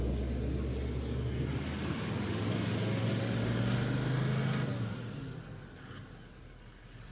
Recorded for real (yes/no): yes